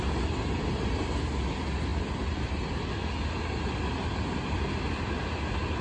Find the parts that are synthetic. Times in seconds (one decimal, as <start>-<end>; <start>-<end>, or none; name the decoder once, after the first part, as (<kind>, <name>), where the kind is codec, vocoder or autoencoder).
none